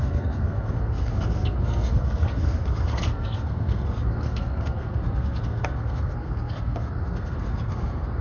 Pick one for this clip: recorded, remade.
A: remade